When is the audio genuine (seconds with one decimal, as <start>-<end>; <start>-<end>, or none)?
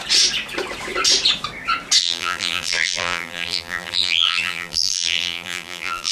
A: 0.0-2.0